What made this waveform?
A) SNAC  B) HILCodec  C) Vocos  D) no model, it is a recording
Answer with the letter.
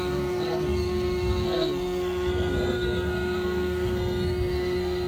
A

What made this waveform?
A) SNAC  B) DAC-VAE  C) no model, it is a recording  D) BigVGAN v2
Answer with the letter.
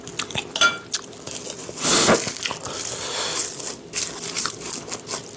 C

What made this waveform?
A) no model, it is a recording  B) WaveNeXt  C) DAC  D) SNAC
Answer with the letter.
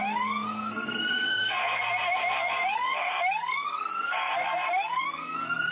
D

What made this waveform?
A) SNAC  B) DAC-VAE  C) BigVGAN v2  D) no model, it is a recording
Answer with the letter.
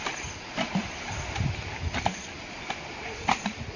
D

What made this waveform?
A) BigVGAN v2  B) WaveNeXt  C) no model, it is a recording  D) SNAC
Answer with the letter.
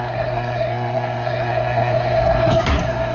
D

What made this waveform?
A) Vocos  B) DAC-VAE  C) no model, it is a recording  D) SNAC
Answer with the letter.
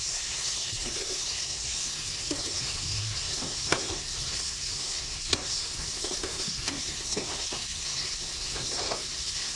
D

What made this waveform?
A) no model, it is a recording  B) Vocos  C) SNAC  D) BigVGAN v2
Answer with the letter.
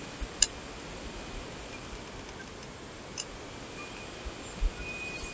A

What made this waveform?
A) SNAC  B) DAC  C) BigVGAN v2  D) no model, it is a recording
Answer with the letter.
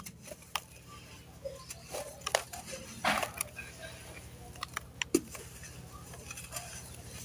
D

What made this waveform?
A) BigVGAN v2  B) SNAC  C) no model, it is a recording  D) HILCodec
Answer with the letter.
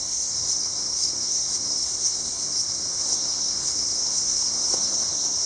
B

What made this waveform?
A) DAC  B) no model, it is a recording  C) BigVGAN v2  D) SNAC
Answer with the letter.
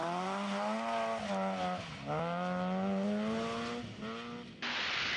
B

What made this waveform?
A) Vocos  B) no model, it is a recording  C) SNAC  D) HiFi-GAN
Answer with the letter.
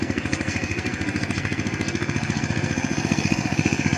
C